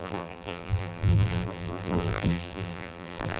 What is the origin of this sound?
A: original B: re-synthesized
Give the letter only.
B